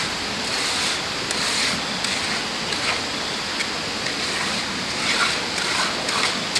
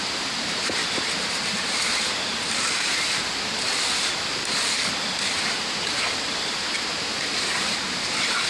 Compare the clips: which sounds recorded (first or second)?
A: first